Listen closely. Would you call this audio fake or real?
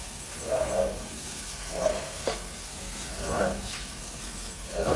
fake